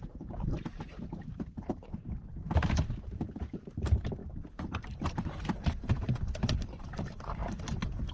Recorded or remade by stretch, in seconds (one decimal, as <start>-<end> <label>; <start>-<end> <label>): 0.0-4.2 remade; 4.2-4.8 recorded; 4.8-8.1 remade